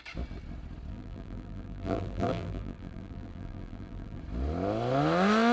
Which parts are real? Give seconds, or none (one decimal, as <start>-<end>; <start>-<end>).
0.0-0.9; 4.2-5.5